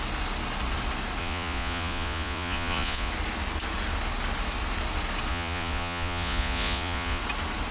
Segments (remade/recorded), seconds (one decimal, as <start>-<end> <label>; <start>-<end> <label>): 0.0-1.2 recorded; 1.2-3.1 remade; 3.1-5.3 recorded; 5.3-7.2 remade; 7.2-7.7 recorded